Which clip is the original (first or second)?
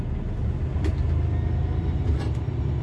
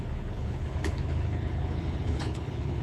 first